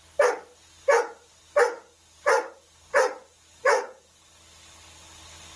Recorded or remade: recorded